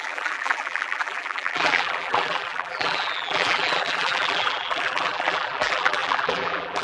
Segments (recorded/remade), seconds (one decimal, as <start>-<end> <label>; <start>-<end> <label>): 0.0-6.8 remade